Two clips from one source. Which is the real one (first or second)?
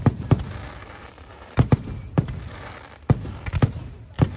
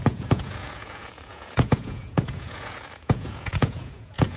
first